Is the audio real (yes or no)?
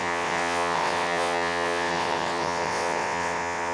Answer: no